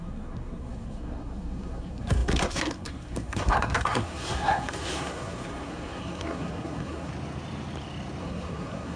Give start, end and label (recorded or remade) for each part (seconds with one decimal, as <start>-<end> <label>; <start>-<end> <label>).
0.0-7.1 remade; 7.1-8.2 recorded; 8.2-9.0 remade